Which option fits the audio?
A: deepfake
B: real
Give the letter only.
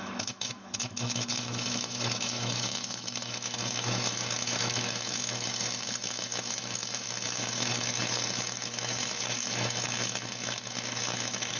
A